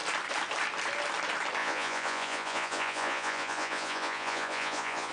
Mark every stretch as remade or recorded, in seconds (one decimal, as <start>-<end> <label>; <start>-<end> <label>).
0.0-1.6 recorded; 1.6-5.1 remade